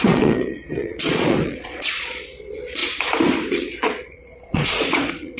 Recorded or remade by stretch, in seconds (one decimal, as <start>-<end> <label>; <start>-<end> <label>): 0.0-2.8 remade; 2.8-3.5 recorded; 3.5-5.4 remade